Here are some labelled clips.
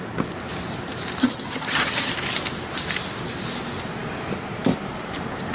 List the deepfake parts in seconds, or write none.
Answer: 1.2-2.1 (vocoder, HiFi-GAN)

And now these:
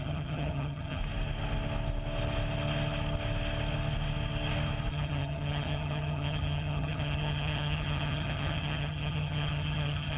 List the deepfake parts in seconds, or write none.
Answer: 0.0-1.0 (vocoder, HiFi-GAN); 4.9-10.2

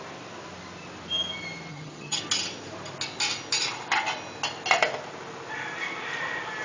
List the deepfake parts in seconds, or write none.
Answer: 1.7-2.2 (vocoder, HiFi-GAN)

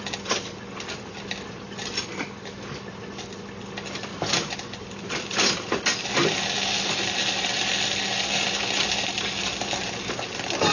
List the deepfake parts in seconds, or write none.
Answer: none

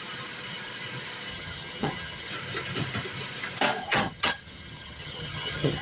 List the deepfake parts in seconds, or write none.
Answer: 1.3-2.3 (vocoder, HiFi-GAN); 3.8-5.8

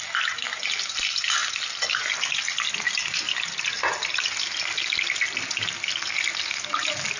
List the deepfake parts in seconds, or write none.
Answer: none

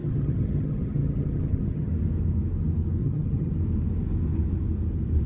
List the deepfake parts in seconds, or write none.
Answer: 0.0-1.9 (vocoder, HiFi-GAN); 3.0-3.5